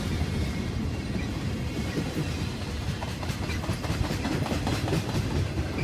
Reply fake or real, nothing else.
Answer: fake